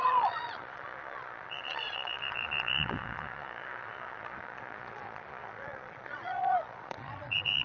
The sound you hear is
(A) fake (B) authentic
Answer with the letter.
A